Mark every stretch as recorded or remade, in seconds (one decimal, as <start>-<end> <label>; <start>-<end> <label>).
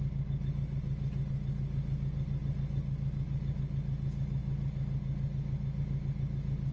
0.0-6.7 recorded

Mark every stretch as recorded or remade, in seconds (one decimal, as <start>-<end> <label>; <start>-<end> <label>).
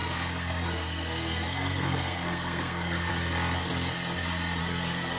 0.0-3.1 remade; 3.1-4.6 recorded; 4.6-5.2 remade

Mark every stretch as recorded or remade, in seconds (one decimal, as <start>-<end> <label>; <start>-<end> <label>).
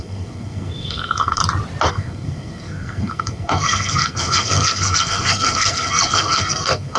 0.0-1.4 remade; 1.4-1.9 recorded; 1.9-7.0 remade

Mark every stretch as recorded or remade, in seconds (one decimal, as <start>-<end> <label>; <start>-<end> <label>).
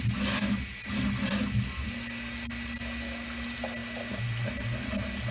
0.0-5.3 recorded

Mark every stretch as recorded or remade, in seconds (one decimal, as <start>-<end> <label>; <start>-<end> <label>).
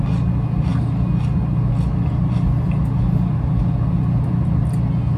0.0-5.2 recorded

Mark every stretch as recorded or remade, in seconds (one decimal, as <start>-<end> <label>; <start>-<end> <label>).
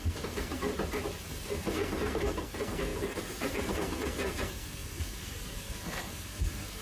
0.0-0.7 remade; 0.7-1.3 recorded; 1.3-6.8 remade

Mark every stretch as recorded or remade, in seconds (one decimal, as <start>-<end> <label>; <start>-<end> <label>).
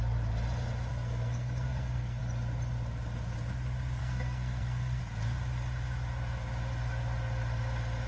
0.0-0.9 recorded; 0.9-2.2 remade; 2.2-4.0 recorded; 4.0-5.0 remade; 5.0-8.1 recorded